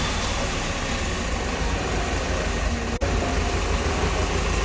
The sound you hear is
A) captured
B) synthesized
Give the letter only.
A